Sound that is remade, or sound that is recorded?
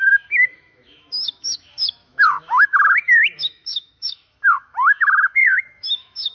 remade